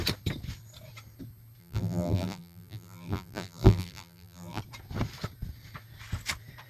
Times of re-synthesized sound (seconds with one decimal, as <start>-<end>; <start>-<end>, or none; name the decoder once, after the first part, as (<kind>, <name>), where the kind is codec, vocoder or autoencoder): 1.6-4.6 (vocoder, BigVGAN v2)